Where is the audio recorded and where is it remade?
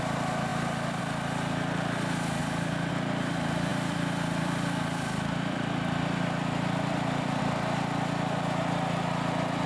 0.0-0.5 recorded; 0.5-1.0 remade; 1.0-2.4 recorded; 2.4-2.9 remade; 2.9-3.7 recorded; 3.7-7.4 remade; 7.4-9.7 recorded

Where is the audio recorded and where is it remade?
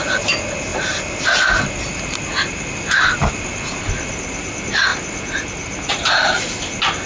0.0-7.1 recorded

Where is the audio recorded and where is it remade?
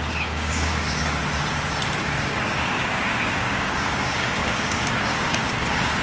0.0-1.2 remade; 1.2-2.0 recorded; 2.0-6.0 remade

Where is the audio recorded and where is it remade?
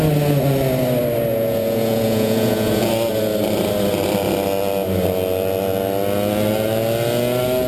0.0-1.3 recorded; 1.3-2.9 remade; 2.9-7.7 recorded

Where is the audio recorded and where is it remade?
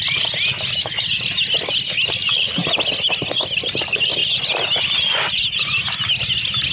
0.0-6.7 recorded